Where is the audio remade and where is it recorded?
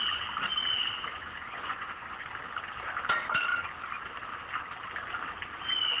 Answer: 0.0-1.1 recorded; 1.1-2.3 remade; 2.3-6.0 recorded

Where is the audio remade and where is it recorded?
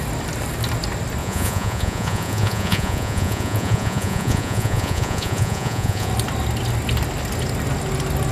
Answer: 0.0-1.2 recorded; 1.2-6.1 remade; 6.1-8.3 recorded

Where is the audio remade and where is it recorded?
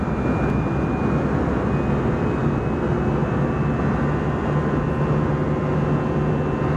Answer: 0.0-6.8 recorded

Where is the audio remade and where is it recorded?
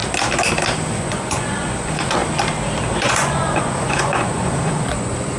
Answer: 0.0-1.0 recorded; 1.0-2.2 remade; 2.2-3.0 recorded; 3.0-5.4 remade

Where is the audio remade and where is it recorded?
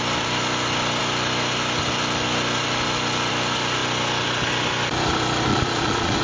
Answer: 0.0-5.5 recorded; 5.5-6.2 remade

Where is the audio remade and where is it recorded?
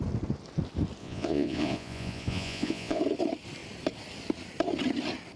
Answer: 0.0-1.0 recorded; 1.0-3.0 remade; 3.0-5.4 recorded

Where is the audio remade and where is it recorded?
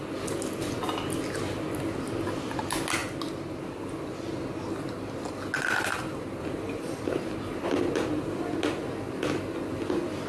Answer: 0.0-10.3 recorded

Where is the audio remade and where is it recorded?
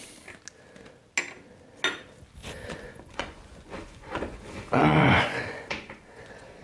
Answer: 0.0-2.4 recorded; 2.4-6.6 remade